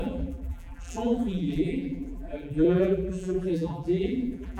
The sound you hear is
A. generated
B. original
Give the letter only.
A